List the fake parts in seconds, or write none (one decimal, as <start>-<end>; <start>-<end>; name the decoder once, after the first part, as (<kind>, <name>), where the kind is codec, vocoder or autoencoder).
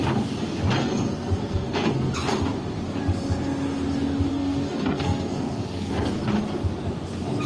0.8-2.1 (codec, SNAC); 4.3-6.2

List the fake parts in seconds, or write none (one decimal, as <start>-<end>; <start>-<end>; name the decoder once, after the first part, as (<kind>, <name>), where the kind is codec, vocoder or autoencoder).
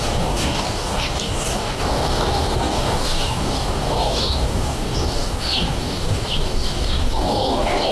0.0-7.9 (codec, DAC)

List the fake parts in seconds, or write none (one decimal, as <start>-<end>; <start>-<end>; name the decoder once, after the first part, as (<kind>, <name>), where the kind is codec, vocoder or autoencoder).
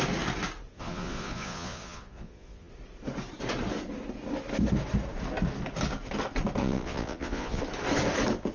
0.7-2.7 (vocoder, Vocos); 6.6-7.6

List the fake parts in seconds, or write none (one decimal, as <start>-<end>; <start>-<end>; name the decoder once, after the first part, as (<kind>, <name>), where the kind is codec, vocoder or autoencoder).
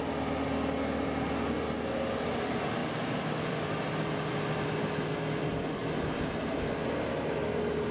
none